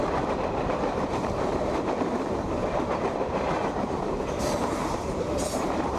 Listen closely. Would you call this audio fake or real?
fake